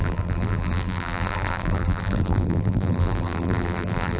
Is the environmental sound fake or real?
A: fake